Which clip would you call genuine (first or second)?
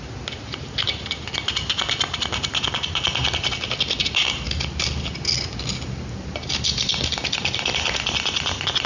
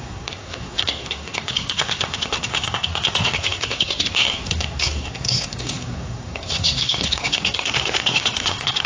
first